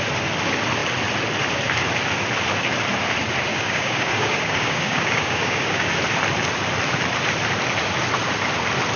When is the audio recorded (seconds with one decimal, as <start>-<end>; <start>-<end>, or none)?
0.0-3.5; 5.9-9.0